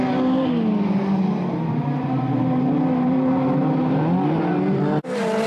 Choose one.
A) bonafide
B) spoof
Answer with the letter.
A